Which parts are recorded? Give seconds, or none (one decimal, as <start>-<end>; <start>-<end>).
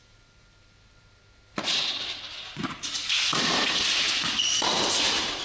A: 0.0-3.3